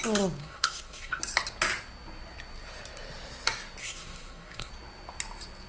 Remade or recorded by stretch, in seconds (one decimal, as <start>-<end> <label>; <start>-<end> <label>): 0.0-0.4 recorded; 0.4-1.2 remade; 1.2-3.8 recorded; 3.8-4.7 remade; 4.7-5.7 recorded